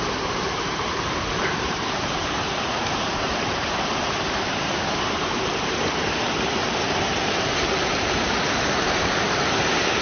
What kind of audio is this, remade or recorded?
remade